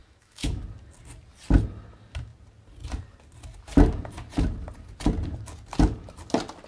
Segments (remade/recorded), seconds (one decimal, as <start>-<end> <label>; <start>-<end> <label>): 0.0-0.6 remade; 0.6-6.7 recorded

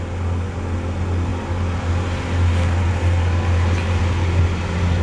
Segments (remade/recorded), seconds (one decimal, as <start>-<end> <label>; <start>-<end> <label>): 0.0-5.0 recorded

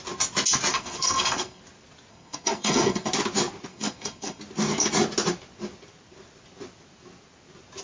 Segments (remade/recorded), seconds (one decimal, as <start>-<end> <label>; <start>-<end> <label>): 0.0-0.7 recorded; 0.7-1.6 remade; 1.6-2.1 recorded; 2.1-3.1 remade; 3.1-3.7 recorded; 3.7-4.4 remade; 4.4-7.8 recorded